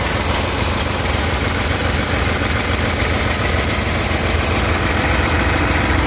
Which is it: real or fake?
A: real